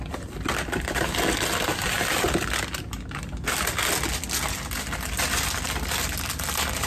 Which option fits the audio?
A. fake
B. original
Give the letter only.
B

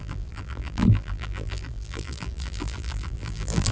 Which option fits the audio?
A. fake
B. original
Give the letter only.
A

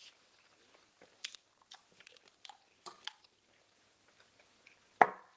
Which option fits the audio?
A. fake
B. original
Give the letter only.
B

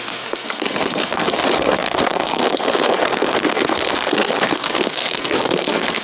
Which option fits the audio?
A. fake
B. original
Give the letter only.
A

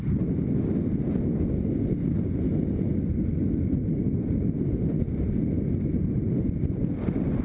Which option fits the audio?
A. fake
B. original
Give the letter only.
B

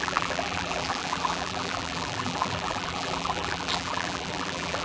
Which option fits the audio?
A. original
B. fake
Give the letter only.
B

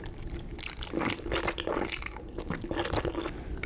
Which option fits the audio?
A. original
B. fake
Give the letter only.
A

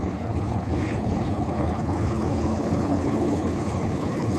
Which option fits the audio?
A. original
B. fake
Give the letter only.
B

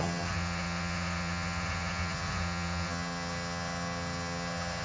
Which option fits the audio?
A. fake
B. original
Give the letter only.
A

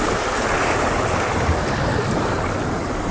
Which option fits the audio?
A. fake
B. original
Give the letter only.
B